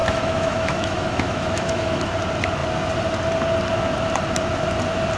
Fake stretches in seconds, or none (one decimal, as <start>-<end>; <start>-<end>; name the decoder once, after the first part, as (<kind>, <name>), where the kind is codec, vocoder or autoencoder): 0.0-2.1 (autoencoder, DAC-VAE)

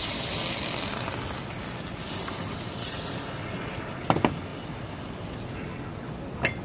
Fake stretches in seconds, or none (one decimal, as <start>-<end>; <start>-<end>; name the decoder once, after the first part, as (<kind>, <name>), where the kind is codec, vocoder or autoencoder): none

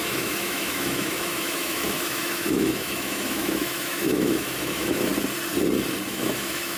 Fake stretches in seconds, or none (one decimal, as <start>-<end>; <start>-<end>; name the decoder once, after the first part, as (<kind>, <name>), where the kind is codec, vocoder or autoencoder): 0.0-5.1 (autoencoder, DAC-VAE); 6.1-6.8

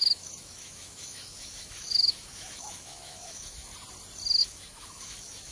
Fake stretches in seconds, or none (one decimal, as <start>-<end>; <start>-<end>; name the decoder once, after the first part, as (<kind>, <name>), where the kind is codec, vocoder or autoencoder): 0.0-3.7 (autoencoder, DAC-VAE); 4.4-5.5

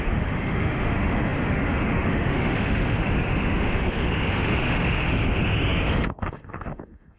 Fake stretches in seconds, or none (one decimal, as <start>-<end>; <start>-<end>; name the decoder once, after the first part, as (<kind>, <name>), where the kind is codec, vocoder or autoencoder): 0.0-7.2 (autoencoder, DAC-VAE)

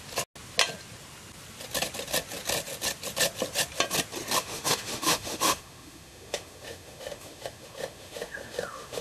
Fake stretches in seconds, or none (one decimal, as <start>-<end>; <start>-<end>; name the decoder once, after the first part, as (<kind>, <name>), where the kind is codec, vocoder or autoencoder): 4.4-9.0 (autoencoder, DAC-VAE)

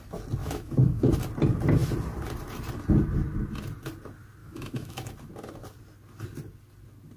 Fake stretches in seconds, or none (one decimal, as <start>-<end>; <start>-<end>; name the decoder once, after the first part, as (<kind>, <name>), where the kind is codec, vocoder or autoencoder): 0.4-1.1 (autoencoder, DAC-VAE); 4.4-5.1